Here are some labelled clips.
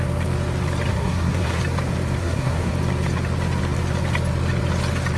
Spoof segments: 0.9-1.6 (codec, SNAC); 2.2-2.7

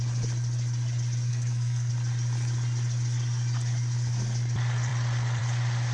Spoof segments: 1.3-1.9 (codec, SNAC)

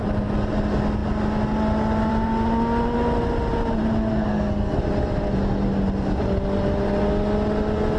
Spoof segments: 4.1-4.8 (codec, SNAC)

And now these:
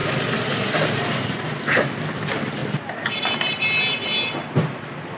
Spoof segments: none

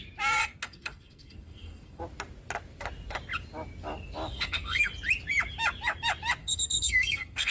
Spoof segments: 0.4-2.0 (codec, SNAC); 4.3-4.9; 6.4-7.5

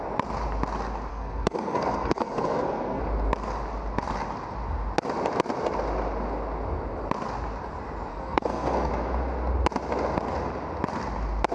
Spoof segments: 1.1-3.0 (codec, SNAC); 8.1-8.9